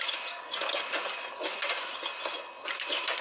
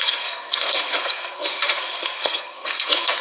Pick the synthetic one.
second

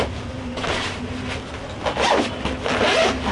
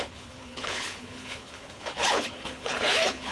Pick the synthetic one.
second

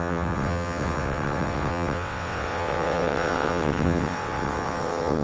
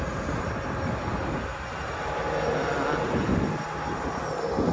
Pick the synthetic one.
first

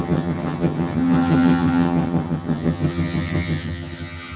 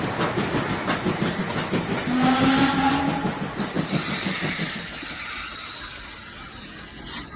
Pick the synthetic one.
first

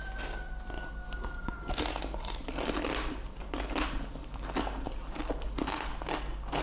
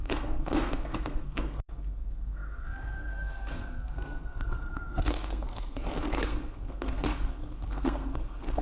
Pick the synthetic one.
second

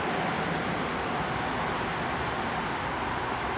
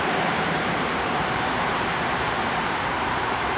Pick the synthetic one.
second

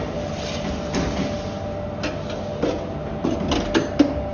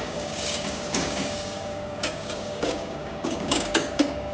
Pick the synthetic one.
second